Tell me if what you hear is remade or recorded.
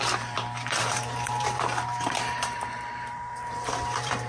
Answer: remade